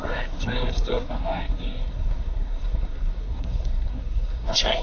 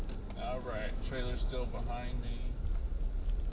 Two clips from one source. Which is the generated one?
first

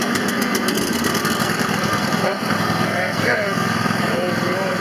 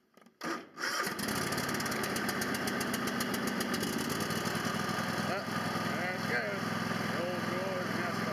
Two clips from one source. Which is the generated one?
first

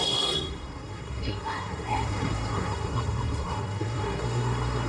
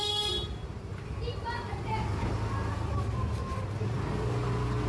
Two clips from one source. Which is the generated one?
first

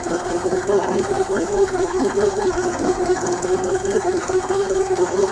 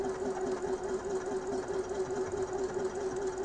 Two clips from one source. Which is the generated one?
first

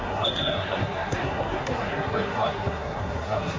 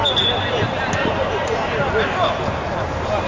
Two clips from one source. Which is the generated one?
first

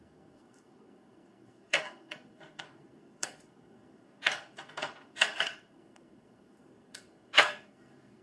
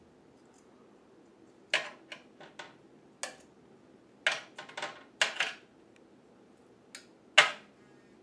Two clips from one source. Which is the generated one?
first